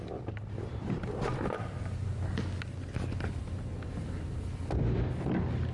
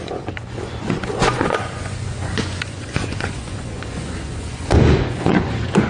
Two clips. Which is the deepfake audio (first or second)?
second